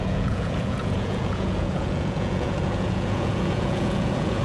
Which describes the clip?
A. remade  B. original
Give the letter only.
A